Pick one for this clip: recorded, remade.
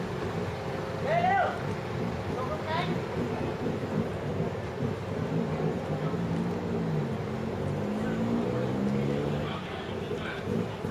recorded